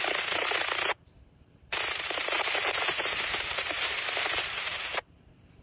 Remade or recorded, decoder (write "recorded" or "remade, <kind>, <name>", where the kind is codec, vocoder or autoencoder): remade, vocoder, BigVGAN v2